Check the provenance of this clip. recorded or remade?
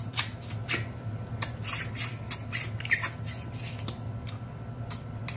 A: recorded